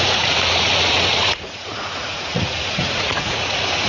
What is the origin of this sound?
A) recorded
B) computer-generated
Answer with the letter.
B